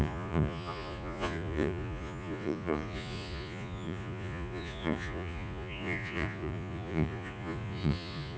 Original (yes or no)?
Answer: no